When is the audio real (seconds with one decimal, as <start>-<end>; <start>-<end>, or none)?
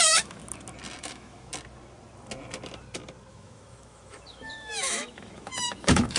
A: 0.4-1.0; 1.5-3.3